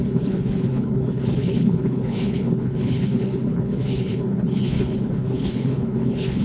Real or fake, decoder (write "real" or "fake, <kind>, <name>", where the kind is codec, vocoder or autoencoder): fake, codec, HILCodec